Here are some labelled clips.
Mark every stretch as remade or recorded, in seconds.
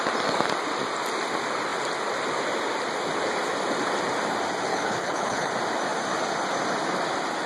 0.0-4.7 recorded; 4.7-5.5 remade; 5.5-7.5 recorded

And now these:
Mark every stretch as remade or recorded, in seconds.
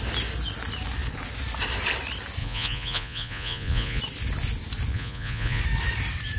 0.0-2.4 recorded; 2.4-4.0 remade; 4.0-4.9 recorded; 4.9-5.6 remade; 5.6-6.4 recorded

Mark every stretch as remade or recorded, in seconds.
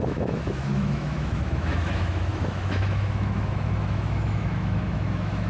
0.0-5.5 remade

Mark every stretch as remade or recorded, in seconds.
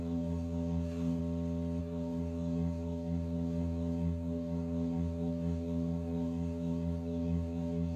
0.0-1.2 remade; 1.2-1.8 recorded; 1.8-8.0 remade